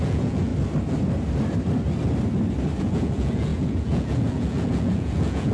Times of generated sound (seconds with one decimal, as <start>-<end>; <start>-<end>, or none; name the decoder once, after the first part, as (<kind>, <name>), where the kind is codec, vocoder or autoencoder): 0.0-0.5 (vocoder, Vocos); 2.8-5.5